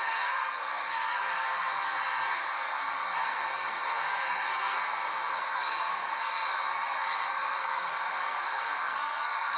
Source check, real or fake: fake